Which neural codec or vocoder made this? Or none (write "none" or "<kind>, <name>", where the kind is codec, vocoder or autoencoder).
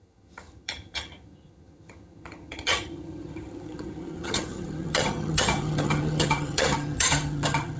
vocoder, HiFi-GAN